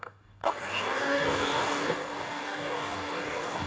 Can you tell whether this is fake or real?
fake